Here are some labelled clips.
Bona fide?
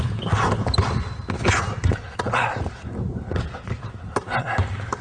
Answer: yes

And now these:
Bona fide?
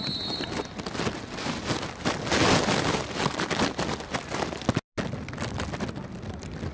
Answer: yes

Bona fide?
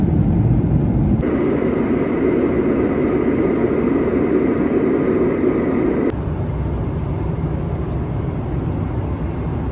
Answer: yes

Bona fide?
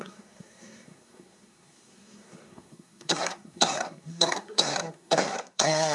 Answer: no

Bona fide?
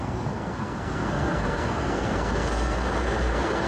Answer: no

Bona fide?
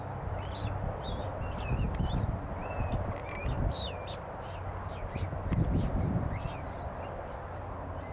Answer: yes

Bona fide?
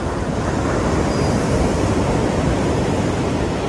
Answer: yes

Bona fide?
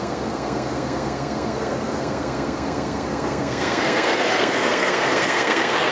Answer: no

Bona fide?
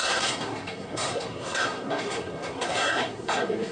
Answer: no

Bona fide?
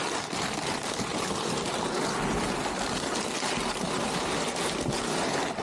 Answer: yes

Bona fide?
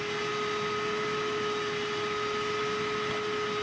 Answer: yes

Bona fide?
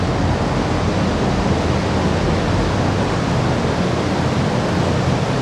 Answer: yes